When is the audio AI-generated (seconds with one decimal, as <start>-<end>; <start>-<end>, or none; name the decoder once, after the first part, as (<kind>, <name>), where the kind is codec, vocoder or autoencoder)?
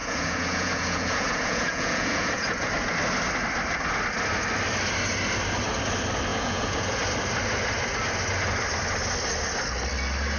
0.0-2.7 (vocoder, Vocos); 6.3-7.0